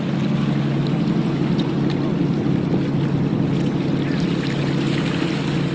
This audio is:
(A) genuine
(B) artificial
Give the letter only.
A